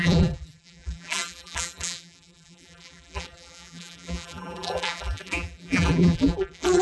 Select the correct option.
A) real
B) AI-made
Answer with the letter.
B